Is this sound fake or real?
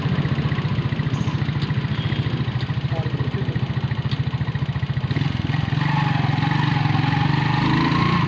real